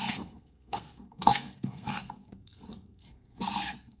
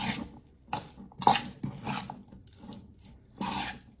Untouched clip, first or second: second